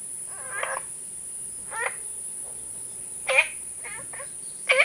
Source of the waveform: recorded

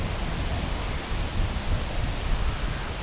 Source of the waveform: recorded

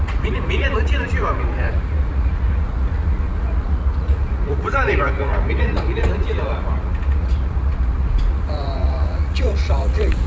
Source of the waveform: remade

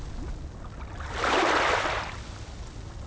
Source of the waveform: recorded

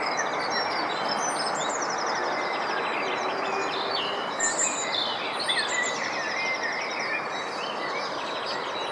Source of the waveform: recorded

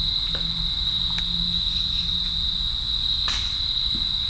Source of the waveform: recorded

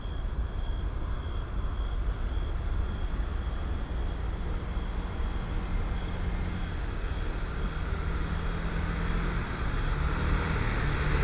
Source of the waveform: recorded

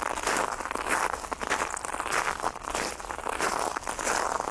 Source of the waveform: recorded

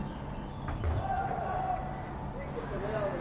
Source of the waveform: recorded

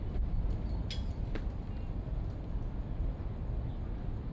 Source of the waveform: recorded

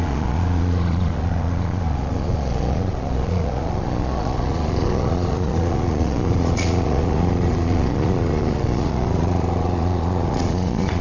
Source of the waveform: remade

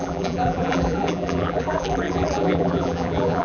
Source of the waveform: remade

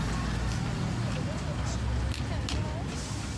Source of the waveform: recorded